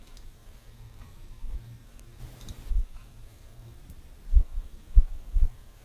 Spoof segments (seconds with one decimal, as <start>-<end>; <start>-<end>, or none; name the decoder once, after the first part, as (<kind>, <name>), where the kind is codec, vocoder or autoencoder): 0.0-2.2 (codec, SNAC); 2.7-3.8; 4.3-5.8